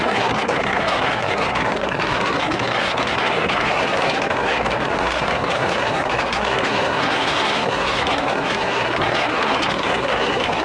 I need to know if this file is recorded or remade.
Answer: remade